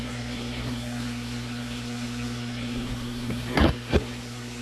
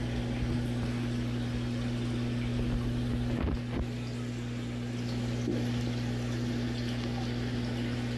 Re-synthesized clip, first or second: first